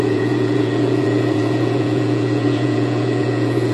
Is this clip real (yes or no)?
no